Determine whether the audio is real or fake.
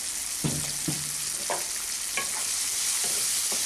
real